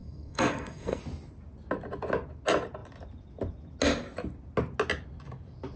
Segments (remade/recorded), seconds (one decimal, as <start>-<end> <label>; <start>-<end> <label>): 0.0-1.0 remade; 1.0-5.8 recorded